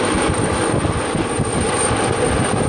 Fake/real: real